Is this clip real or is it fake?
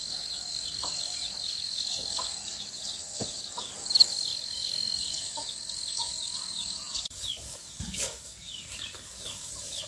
fake